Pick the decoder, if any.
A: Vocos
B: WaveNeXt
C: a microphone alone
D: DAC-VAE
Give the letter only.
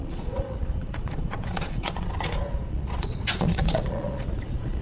A